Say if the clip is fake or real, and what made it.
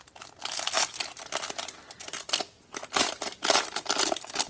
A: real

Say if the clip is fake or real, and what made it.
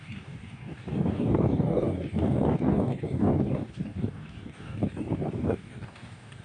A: fake, codec, DAC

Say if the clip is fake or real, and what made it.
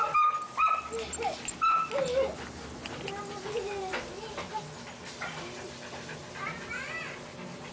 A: real